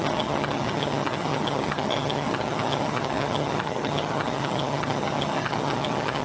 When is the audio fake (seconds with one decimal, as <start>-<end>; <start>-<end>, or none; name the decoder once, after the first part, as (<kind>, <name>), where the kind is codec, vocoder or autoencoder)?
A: 0.0-6.2 (vocoder, HiFi-GAN)